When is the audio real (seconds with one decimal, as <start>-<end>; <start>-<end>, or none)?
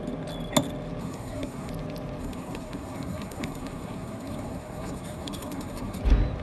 0.0-1.0; 1.7-2.2; 6.0-6.4